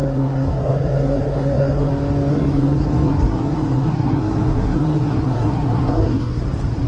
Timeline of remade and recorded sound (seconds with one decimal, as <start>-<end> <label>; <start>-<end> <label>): 0.0-1.9 remade; 1.9-2.3 recorded; 2.3-6.4 remade; 6.4-6.9 recorded